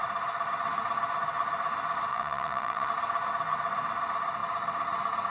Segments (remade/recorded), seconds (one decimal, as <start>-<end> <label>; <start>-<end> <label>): 0.0-2.1 recorded; 2.1-2.9 remade; 2.9-5.3 recorded